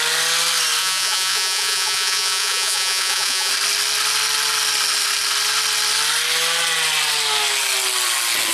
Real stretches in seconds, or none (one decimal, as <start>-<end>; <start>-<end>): 0.0-0.8; 3.5-8.5